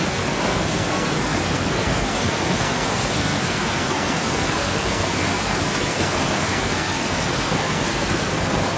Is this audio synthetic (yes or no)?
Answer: yes